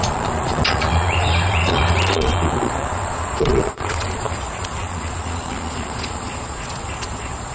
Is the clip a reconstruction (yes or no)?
yes